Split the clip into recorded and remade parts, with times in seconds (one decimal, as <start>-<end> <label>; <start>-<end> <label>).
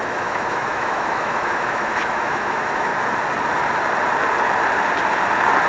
0.0-2.9 remade; 2.9-5.7 recorded